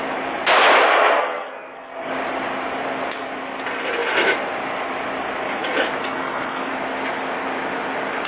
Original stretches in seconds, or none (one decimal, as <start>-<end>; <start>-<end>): 0.0-1.2; 2.1-6.0; 6.7-8.3